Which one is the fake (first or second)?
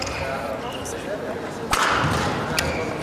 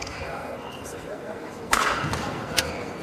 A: second